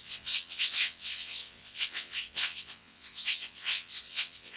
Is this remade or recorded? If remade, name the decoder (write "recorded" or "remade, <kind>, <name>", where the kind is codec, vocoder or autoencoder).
remade, vocoder, WaveNeXt